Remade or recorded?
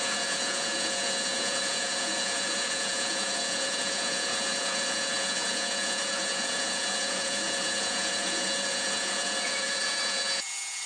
remade